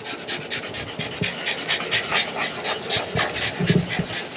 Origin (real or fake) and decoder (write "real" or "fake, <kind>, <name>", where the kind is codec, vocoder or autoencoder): real